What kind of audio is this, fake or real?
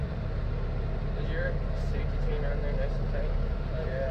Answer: real